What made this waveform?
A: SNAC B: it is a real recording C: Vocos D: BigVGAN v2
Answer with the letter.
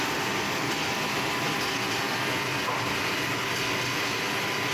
D